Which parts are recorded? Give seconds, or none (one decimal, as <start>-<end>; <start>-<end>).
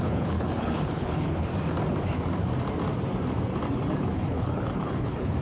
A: 1.5-4.0